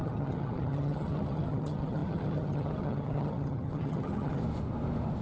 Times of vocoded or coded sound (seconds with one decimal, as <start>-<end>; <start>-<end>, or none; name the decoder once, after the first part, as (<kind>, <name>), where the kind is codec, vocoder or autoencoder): 0.0-4.4 (vocoder, HiFi-GAN)

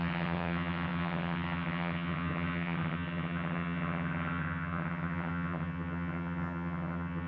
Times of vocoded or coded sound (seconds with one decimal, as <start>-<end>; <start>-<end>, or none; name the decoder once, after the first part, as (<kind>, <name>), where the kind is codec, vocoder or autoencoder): 0.0-7.3 (vocoder, HiFi-GAN)

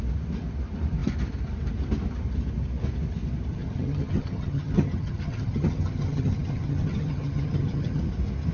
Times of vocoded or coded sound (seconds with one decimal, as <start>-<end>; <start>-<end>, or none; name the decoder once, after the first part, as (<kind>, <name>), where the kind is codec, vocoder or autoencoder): 3.5-8.0 (vocoder, HiFi-GAN)

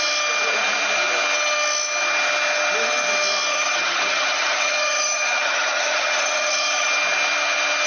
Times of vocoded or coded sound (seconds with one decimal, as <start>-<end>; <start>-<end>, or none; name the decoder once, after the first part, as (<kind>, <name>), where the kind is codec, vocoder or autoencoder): 3.5-6.9 (vocoder, HiFi-GAN)

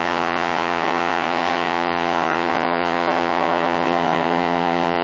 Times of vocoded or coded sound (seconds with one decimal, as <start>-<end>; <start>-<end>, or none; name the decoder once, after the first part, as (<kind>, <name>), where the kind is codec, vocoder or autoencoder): 0.0-5.0 (vocoder, HiFi-GAN)

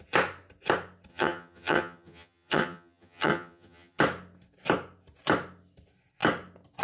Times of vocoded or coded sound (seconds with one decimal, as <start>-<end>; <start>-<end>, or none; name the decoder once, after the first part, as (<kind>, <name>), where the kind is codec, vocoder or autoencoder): 1.1-4.0 (vocoder, HiFi-GAN)